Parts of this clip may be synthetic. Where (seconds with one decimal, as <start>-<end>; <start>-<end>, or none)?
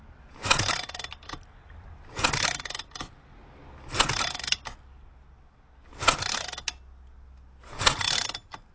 none